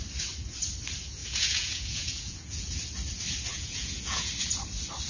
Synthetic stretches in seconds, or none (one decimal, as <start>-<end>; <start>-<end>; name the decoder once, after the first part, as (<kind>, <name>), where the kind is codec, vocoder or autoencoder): 1.2-2.7 (vocoder, Vocos); 3.5-4.3